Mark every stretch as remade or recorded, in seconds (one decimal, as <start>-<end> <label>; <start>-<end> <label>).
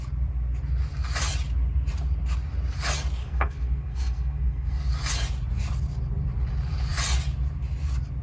0.0-3.2 recorded; 3.2-4.9 remade; 4.9-8.2 recorded